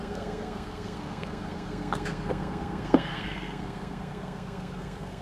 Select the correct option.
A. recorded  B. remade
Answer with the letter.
B